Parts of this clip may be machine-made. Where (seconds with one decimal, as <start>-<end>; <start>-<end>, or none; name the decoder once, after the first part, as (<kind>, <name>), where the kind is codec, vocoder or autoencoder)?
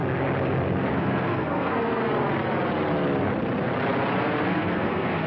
0.9-2.0 (codec, SNAC); 4.5-5.3